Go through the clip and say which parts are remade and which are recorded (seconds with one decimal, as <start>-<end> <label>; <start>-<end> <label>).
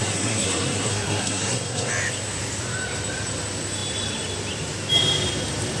0.0-1.9 remade; 1.9-5.8 recorded